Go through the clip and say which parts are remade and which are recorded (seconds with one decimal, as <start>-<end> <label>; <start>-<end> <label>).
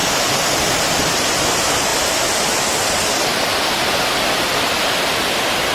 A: 0.0-0.8 remade; 0.8-5.7 recorded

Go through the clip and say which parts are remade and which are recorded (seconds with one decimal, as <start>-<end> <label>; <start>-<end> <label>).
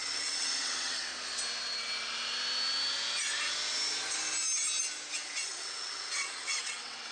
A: 0.0-1.1 remade; 1.1-5.1 recorded; 5.1-7.1 remade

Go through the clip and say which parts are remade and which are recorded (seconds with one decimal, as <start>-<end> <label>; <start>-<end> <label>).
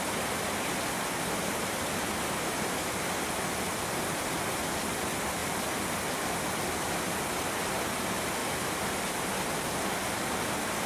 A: 0.0-10.9 recorded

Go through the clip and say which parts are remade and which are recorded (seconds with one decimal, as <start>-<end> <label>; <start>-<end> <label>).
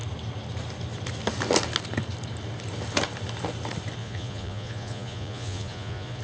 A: 0.0-4.0 recorded; 4.0-6.2 remade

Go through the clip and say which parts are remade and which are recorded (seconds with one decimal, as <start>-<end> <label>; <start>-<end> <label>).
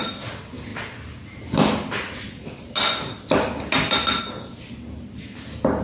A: 0.0-5.8 recorded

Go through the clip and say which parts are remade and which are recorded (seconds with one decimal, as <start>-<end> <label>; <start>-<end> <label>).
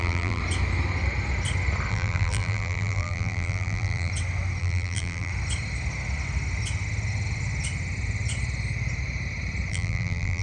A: 0.0-0.4 remade; 0.4-1.9 recorded; 1.9-4.1 remade; 4.1-4.6 recorded; 4.6-5.3 remade; 5.3-9.7 recorded; 9.7-10.4 remade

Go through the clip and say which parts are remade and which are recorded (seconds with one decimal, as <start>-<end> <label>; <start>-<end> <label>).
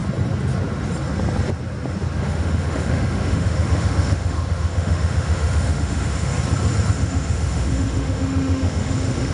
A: 0.0-2.2 recorded; 2.2-6.3 remade; 6.3-6.9 recorded; 6.9-9.3 remade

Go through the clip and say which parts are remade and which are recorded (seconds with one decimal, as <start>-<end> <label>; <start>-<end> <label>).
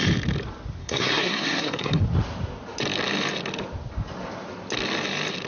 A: 0.0-0.8 recorded; 0.8-2.0 remade; 2.0-5.5 recorded